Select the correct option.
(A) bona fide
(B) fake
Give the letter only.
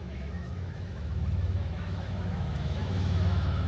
B